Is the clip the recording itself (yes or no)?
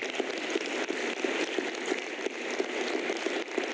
yes